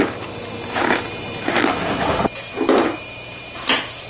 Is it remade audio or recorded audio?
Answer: remade